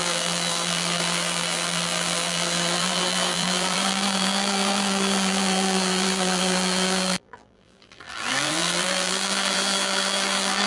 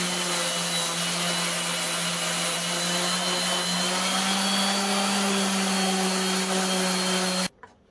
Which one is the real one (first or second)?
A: second